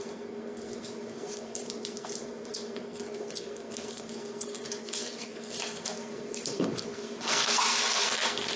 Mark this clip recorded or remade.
remade